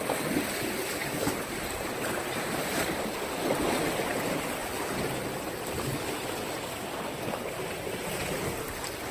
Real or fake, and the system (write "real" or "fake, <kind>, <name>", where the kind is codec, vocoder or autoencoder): fake, vocoder, BigVGAN v2